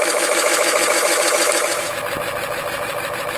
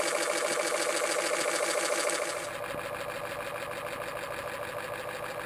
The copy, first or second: first